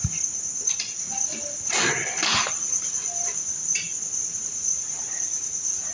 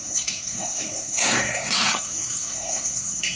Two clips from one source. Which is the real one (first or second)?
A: first